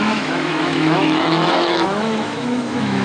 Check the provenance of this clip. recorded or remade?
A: remade